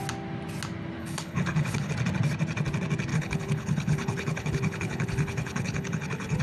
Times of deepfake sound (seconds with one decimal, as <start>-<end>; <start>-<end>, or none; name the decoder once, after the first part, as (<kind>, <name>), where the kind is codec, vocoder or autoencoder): 1.0-1.9 (codec, HILCodec); 3.1-6.4